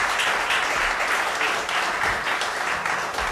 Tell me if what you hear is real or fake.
real